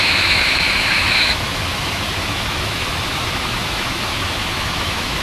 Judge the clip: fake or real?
fake